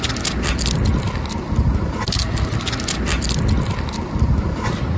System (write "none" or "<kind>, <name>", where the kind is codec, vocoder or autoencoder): none